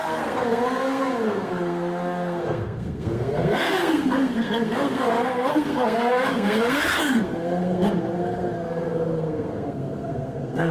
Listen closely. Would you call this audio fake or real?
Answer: fake